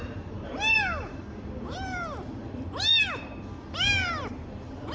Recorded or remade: remade